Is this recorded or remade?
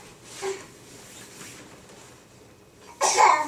remade